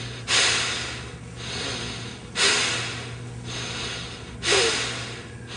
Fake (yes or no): no